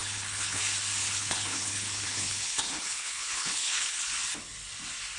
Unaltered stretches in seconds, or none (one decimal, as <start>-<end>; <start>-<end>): 0.6-1.0; 4.1-5.2